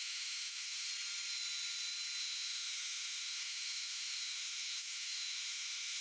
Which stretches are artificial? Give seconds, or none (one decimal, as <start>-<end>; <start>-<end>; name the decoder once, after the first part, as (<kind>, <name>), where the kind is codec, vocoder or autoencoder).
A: 0.0-0.9 (autoencoder, DAC-VAE); 2.2-6.0